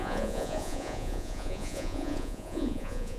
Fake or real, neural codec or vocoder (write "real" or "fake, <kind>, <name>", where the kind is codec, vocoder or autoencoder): fake, vocoder, Vocos